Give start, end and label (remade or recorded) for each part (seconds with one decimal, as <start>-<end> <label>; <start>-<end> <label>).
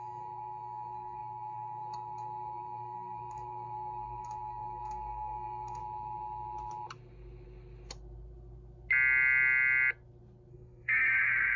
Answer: 0.0-5.8 remade; 5.8-10.5 recorded; 10.5-11.6 remade